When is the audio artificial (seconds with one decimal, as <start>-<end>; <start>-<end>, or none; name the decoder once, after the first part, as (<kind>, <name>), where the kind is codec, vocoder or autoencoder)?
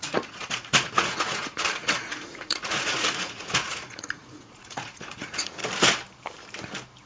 0.0-5.6 (vocoder, Vocos)